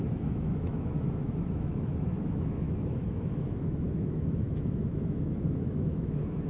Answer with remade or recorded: remade